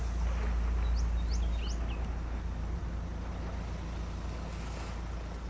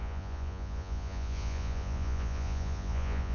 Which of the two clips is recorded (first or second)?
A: first